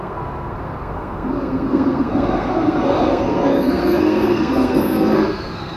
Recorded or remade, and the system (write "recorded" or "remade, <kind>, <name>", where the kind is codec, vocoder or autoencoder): remade, codec, SNAC